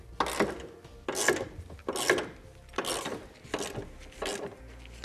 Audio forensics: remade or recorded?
recorded